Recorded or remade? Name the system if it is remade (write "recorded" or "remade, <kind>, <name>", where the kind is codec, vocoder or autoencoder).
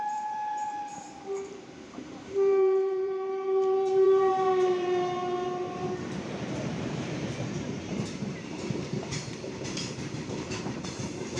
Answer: remade, vocoder, BigVGAN v2